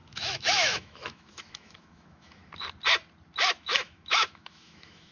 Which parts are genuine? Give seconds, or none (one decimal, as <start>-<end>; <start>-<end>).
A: 2.4-3.6